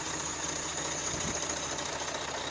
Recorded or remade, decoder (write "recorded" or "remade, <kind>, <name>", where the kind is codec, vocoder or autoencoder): remade, vocoder, BigVGAN v2